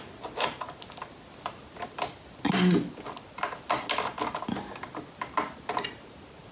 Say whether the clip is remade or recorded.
recorded